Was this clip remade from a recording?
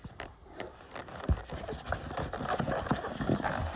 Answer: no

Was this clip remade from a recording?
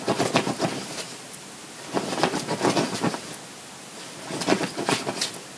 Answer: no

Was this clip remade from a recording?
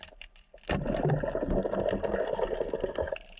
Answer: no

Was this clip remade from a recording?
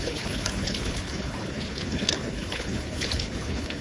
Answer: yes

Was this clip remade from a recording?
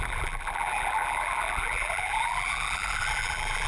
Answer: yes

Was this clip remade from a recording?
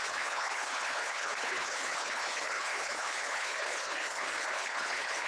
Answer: yes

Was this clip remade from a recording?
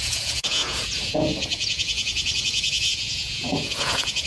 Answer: yes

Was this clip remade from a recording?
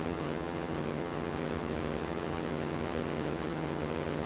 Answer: yes